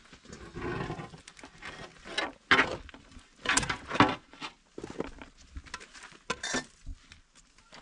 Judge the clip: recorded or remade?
recorded